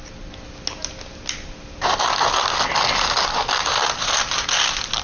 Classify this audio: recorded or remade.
recorded